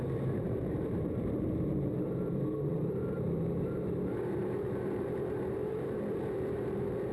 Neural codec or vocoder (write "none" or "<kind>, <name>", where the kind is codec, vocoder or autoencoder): vocoder, BigVGAN v2